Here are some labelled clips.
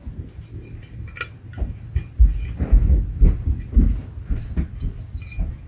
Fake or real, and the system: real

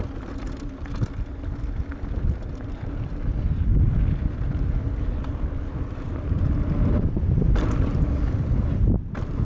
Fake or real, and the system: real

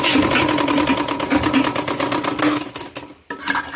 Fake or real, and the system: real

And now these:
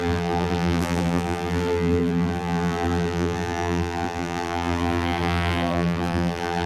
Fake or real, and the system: fake, vocoder, BigVGAN v2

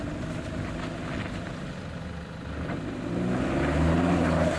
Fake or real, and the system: real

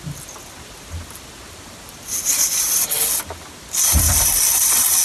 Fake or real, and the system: real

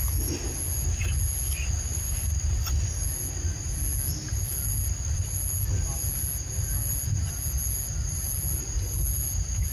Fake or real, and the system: real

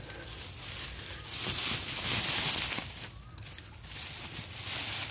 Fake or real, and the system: real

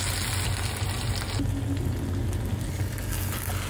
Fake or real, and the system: real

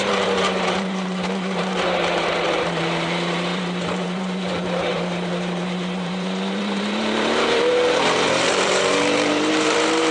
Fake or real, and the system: fake, vocoder, BigVGAN v2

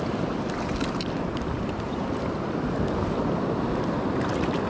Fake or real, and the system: fake, vocoder, BigVGAN v2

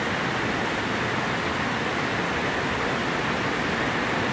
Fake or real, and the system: real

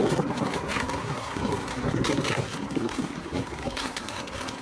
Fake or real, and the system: fake, codec, SNAC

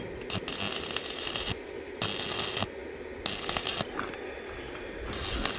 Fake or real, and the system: real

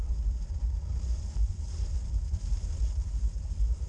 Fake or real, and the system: fake, vocoder, BigVGAN v2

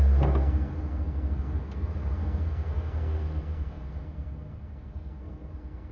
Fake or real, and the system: fake, codec, SNAC